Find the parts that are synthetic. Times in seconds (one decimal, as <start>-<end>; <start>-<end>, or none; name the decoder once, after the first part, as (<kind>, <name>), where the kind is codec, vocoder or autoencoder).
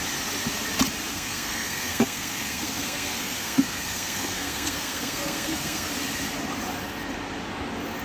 1.1-5.9 (codec, SNAC)